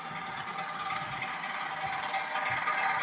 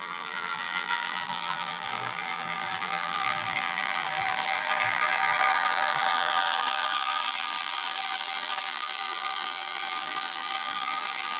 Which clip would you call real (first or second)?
first